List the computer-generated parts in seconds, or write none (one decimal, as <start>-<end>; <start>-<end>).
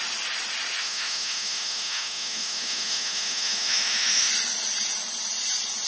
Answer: 0.8-4.3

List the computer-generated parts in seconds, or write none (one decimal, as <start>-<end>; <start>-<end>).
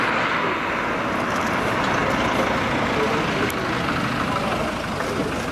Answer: none